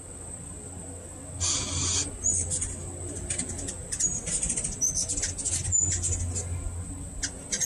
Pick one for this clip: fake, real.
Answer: real